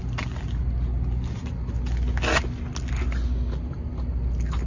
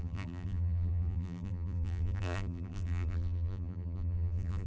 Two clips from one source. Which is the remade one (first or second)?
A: second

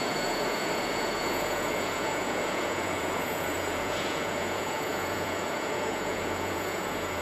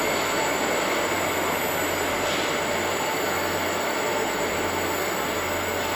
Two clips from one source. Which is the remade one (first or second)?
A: first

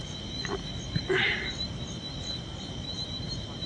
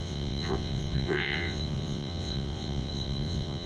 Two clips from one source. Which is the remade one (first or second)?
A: second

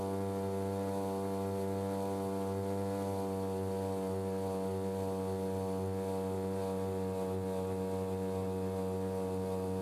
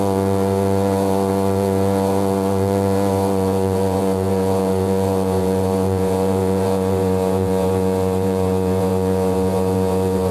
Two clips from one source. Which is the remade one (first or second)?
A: second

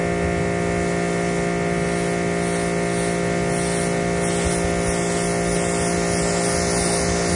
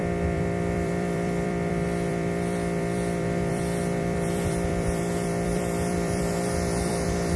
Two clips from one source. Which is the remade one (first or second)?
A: second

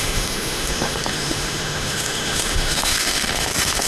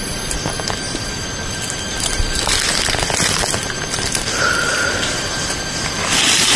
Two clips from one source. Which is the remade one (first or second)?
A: first